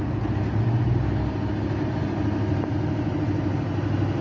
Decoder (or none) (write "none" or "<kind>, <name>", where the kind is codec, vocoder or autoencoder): none